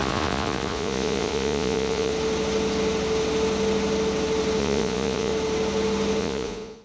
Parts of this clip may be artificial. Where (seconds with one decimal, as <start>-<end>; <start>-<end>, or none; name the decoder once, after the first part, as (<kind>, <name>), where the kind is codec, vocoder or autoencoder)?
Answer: 0.0-2.1 (vocoder, Vocos); 4.6-5.3; 6.2-6.8